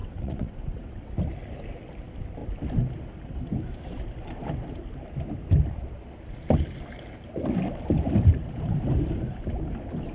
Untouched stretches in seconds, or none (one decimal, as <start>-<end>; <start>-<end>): 1.2-10.1